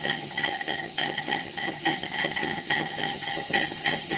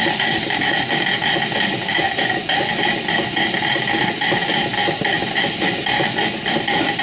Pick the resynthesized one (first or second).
first